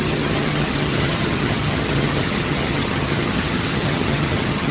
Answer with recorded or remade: remade